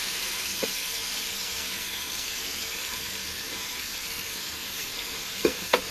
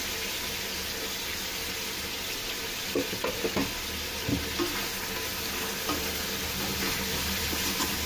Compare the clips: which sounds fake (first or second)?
first